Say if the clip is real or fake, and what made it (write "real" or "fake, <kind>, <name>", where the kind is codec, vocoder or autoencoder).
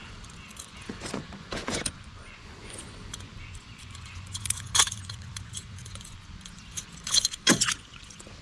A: fake, vocoder, Vocos